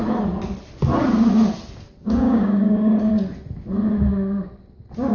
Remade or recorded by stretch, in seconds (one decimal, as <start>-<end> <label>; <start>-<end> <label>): 0.0-2.0 recorded; 2.0-3.1 remade; 3.1-5.1 recorded